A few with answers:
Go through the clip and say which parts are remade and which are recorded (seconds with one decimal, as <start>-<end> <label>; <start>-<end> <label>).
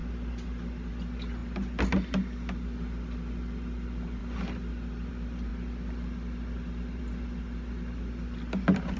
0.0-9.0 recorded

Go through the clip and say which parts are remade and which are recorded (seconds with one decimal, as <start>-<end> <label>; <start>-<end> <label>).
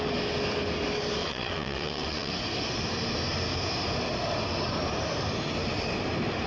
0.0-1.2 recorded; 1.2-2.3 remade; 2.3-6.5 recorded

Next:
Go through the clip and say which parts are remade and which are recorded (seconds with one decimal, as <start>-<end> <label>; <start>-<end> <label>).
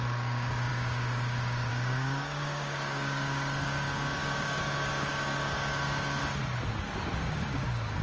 0.0-6.2 remade; 6.2-7.2 recorded; 7.2-8.0 remade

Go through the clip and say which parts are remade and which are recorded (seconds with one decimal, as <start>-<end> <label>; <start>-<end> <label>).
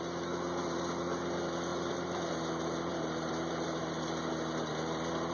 0.0-1.7 recorded; 1.7-2.3 remade; 2.3-2.9 recorded; 2.9-4.3 remade; 4.3-5.3 recorded